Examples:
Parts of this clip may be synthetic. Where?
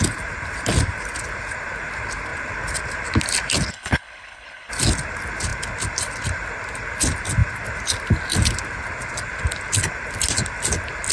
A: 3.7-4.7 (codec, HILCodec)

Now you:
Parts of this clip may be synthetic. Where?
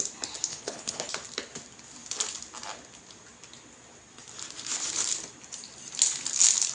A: 0.5-1.1 (codec, HILCodec)